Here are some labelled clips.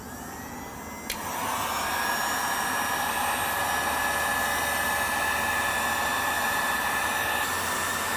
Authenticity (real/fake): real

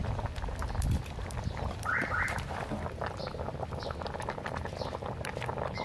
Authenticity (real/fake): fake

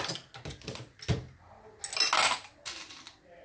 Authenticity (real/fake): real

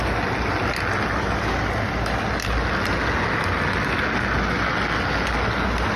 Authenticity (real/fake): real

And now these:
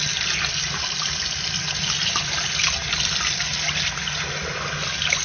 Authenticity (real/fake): real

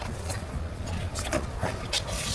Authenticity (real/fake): fake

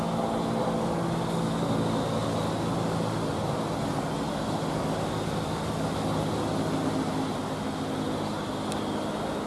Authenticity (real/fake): real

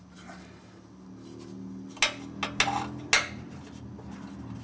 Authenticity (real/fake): real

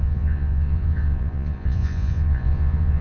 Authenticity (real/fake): fake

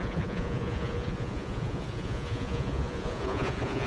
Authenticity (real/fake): fake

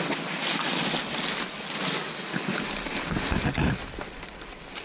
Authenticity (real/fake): real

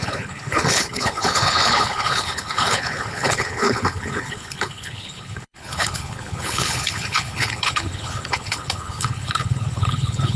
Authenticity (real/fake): fake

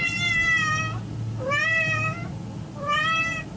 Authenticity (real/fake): real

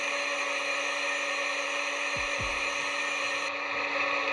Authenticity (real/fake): real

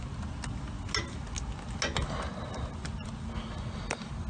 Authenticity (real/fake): real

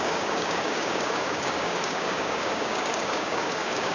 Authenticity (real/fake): fake